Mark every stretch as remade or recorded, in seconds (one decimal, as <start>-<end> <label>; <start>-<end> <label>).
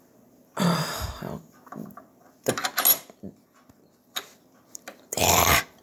0.0-2.6 remade; 2.6-4.2 recorded; 4.2-5.8 remade